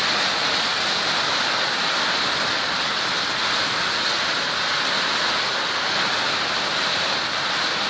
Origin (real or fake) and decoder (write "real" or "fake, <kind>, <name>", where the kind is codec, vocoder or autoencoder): real